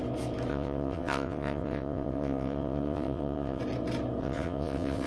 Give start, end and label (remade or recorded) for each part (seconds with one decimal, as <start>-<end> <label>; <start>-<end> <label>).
0.0-0.5 recorded; 0.5-3.6 remade; 3.6-4.2 recorded; 4.2-5.1 remade